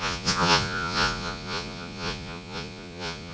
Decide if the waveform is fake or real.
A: fake